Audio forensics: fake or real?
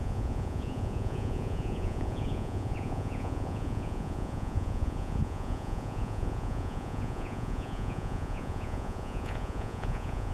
fake